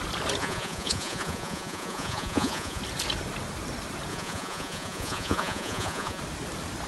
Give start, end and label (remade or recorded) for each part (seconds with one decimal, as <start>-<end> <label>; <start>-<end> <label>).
0.0-0.4 recorded; 0.4-2.8 remade; 2.8-4.1 recorded; 4.1-6.2 remade; 6.2-6.9 recorded